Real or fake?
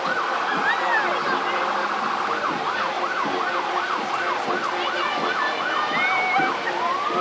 real